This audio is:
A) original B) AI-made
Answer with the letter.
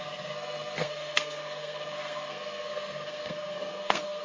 B